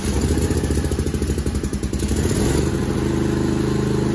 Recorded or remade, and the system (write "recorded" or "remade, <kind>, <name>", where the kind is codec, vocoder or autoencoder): recorded